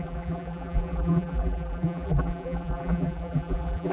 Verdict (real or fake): fake